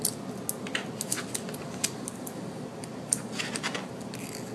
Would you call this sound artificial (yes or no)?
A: no